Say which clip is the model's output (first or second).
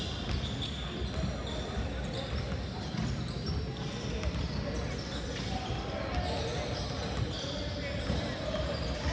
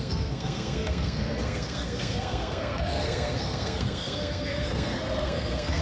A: second